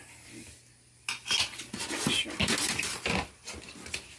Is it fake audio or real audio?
real